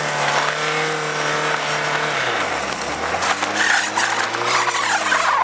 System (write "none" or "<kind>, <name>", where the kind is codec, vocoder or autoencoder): none